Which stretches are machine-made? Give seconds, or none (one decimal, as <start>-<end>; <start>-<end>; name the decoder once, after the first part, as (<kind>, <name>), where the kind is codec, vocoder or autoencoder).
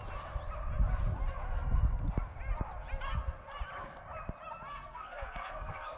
4.7-6.0 (codec, SNAC)